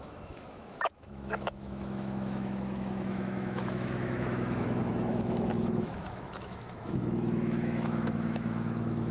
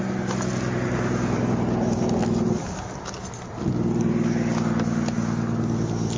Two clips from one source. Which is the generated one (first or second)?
first